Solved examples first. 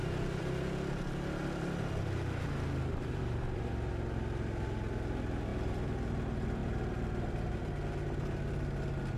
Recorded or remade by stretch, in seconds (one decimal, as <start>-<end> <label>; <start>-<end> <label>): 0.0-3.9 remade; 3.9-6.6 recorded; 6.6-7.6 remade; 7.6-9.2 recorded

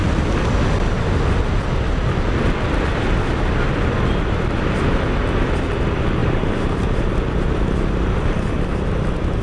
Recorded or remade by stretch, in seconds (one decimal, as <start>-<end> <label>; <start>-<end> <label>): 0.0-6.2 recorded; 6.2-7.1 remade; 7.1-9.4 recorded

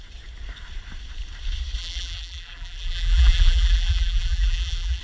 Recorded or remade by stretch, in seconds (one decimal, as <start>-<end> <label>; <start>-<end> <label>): 0.0-1.8 recorded; 1.8-5.0 remade